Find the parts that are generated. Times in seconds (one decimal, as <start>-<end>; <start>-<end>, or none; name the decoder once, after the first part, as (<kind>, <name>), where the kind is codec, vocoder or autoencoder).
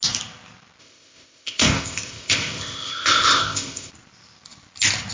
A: 0.8-3.9 (codec, ZipCodec)